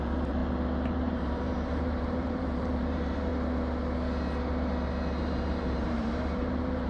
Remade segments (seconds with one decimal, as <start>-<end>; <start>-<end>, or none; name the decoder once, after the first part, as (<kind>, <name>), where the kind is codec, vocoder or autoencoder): 0.0-0.4 (vocoder, BigVGAN v2); 0.9-3.3; 5.2-6.9